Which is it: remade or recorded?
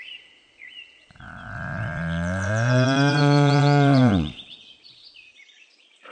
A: remade